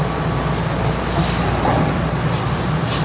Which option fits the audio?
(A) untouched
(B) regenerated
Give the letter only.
A